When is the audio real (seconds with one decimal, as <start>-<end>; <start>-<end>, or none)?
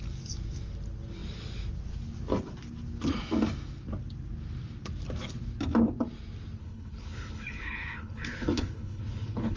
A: 0.0-6.6